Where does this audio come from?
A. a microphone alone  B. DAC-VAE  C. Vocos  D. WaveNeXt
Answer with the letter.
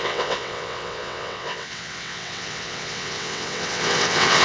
D